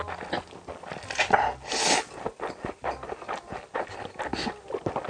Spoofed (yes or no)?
no